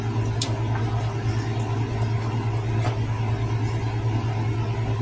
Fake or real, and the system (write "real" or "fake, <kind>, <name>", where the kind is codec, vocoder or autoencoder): real